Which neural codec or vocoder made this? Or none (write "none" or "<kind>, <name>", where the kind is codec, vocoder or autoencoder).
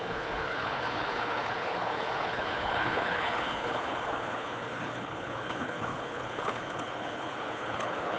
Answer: codec, HILCodec